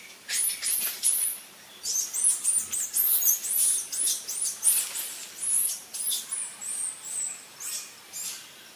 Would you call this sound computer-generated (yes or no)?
no